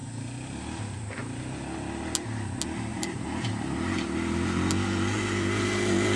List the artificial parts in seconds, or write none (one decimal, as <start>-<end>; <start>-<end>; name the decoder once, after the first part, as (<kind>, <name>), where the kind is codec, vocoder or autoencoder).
2.9-3.5 (vocoder, BigVGAN v2)